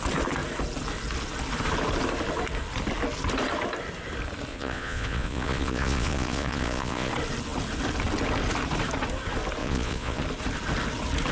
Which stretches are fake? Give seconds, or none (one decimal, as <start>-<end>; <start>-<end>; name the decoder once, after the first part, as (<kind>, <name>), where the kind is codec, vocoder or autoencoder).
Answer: 4.5-7.1 (vocoder, Vocos); 9.6-10.2